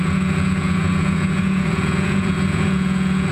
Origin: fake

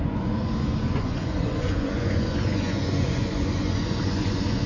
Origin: fake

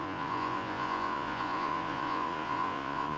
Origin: fake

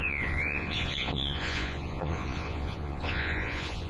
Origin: fake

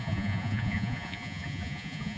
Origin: fake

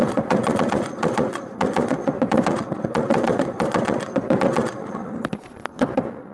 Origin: fake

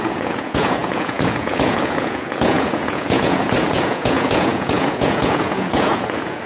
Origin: fake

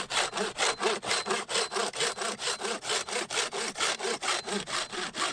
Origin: real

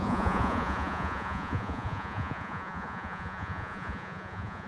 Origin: fake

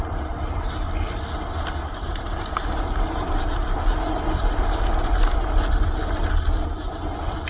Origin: real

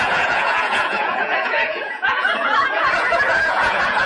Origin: fake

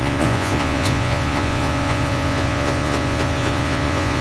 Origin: fake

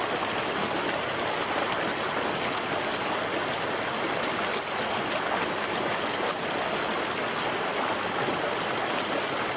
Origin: real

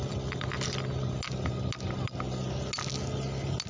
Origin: real